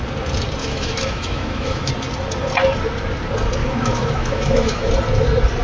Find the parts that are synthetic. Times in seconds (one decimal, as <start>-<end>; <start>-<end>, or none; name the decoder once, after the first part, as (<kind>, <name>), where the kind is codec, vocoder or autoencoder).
0.6-1.9 (autoencoder, DAC-VAE); 3.6-4.9